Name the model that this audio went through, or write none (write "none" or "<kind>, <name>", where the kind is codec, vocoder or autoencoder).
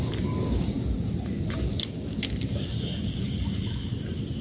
none